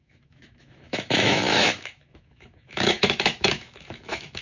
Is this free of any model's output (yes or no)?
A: no